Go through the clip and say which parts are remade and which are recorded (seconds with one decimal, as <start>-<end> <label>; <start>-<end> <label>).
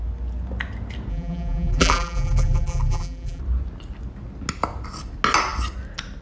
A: 0.0-1.1 recorded; 1.1-3.4 remade; 3.4-6.2 recorded